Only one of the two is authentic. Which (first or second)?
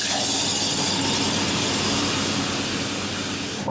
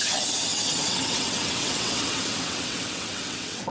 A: first